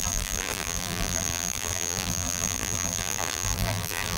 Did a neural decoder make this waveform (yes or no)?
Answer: yes